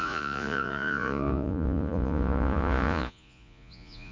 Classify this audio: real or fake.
fake